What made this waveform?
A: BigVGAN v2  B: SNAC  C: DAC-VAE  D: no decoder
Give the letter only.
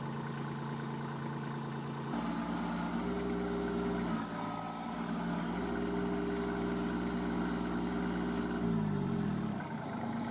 D